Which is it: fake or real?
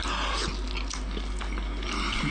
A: real